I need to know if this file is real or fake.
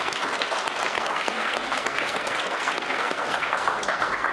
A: fake